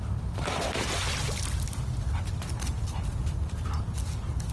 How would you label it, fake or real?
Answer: real